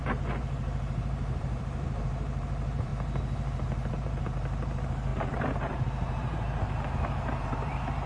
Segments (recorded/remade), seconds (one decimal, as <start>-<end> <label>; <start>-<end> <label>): 0.0-2.9 remade; 2.9-3.9 recorded; 3.9-8.1 remade